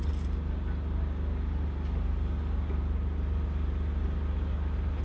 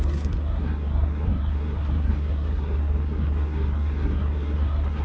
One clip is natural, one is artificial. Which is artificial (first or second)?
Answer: second